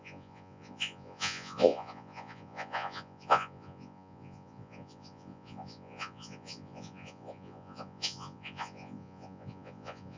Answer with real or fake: fake